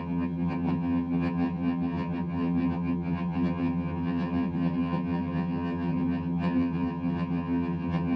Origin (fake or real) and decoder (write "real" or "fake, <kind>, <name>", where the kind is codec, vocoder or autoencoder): fake, vocoder, HiFi-GAN